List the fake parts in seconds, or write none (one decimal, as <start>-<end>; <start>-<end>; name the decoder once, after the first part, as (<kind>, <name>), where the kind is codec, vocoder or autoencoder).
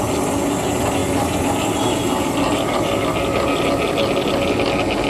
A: none